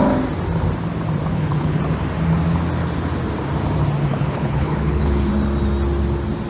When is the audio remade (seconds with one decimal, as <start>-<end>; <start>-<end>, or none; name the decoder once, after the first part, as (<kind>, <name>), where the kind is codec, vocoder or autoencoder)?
1.3-1.8 (codec, HILCodec); 4.1-5.3